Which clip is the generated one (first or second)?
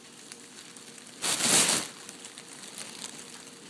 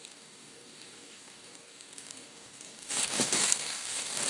second